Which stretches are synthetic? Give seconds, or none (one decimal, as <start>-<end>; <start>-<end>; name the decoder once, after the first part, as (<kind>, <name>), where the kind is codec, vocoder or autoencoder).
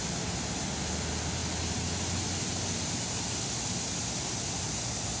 none